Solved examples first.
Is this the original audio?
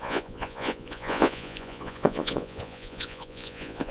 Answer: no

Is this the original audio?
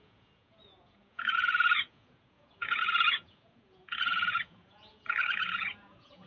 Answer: no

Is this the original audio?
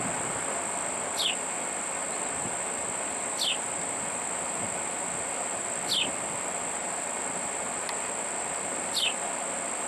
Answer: yes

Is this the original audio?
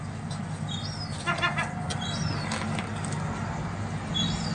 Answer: yes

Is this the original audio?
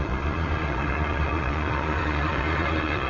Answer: no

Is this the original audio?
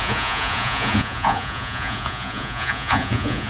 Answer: no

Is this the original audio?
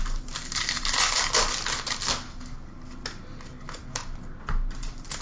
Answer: yes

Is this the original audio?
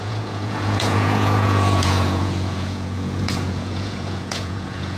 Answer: no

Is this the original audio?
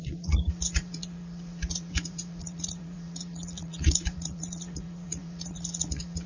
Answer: no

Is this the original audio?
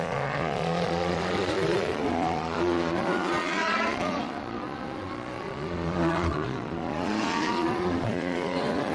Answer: no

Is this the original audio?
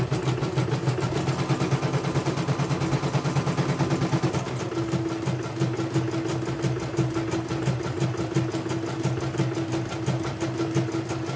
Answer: yes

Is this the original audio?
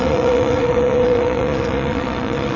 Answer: no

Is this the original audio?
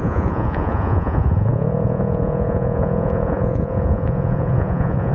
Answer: no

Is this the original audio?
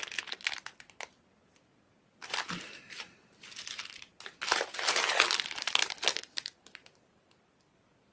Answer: yes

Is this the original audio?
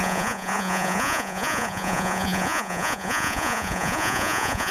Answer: no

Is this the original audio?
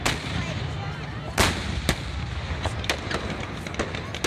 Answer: yes